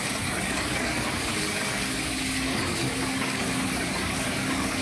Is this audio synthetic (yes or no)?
yes